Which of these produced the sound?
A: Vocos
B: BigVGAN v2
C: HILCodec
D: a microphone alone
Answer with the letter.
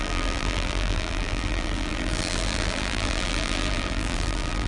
B